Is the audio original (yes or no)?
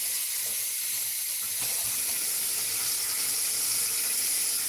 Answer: yes